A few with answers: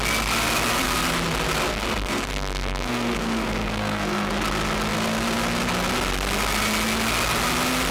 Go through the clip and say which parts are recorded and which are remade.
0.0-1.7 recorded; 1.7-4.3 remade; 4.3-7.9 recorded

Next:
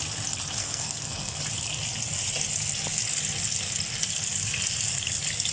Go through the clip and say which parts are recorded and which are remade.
0.0-0.6 recorded; 0.6-1.4 remade; 1.4-5.5 recorded

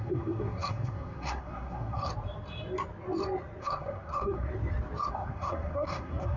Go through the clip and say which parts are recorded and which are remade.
0.0-2.1 remade; 2.1-3.6 recorded; 3.6-4.5 remade; 4.5-5.1 recorded; 5.1-6.4 remade

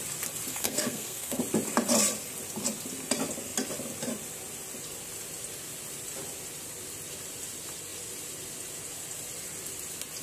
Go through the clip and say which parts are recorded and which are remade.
0.0-0.5 recorded; 0.5-1.4 remade; 1.4-10.2 recorded

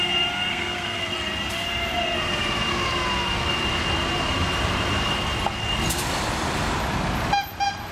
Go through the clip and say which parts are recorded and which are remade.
0.0-0.5 recorded; 0.5-1.0 remade; 1.0-7.9 recorded

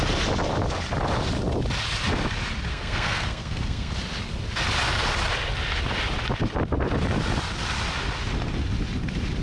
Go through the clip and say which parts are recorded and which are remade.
0.0-2.7 recorded; 2.7-3.9 remade; 3.9-9.4 recorded

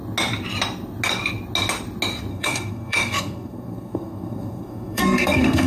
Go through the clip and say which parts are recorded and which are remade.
0.0-2.3 recorded; 2.3-5.7 remade